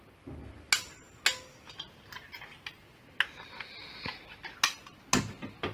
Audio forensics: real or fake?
real